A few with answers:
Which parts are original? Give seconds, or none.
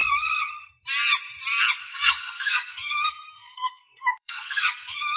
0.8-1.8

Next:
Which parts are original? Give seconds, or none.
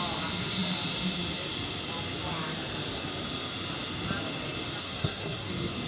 0.0-4.8; 5.5-5.9